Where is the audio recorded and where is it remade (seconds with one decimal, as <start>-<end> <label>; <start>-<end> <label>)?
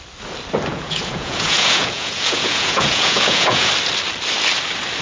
0.0-0.7 recorded; 0.7-3.7 remade; 3.7-5.0 recorded